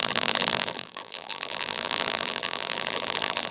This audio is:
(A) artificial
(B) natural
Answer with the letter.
A